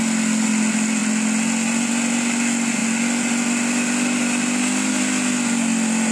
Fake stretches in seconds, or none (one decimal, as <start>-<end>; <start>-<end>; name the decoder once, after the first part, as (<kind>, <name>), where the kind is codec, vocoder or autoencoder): none